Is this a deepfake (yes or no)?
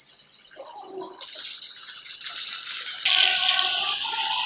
no